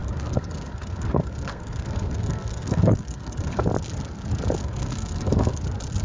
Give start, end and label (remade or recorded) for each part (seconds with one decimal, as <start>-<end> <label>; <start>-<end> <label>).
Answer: 0.0-3.6 remade; 3.6-4.6 recorded; 4.6-5.6 remade; 5.6-6.0 recorded